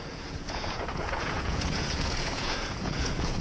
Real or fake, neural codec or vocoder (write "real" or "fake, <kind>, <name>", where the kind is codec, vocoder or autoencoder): fake, vocoder, Vocos